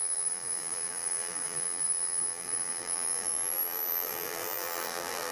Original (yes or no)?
no